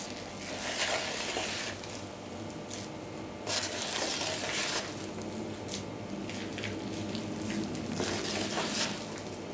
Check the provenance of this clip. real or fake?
real